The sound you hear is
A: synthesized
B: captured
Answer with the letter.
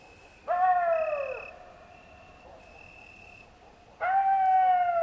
B